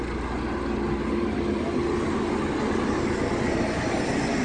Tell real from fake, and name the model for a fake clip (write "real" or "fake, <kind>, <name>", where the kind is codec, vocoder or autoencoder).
real